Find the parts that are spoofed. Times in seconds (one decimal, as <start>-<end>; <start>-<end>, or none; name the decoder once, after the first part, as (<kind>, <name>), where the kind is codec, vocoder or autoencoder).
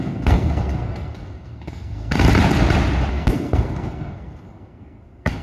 0.0-2.3 (codec, SNAC); 3.1-5.4